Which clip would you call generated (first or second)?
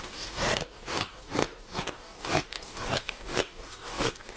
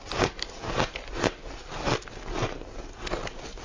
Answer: first